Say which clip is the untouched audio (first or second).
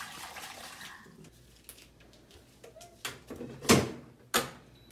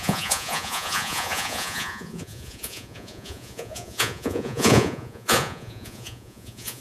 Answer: first